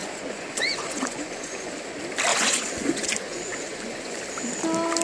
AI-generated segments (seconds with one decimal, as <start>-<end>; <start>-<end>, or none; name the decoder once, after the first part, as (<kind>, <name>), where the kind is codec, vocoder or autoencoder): 0.0-1.7 (vocoder, Vocos); 2.3-4.2